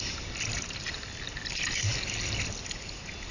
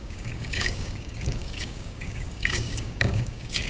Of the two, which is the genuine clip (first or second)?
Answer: first